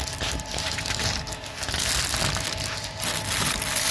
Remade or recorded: recorded